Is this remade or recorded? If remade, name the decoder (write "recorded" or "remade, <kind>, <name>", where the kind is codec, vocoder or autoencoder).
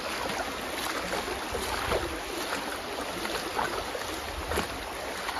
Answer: recorded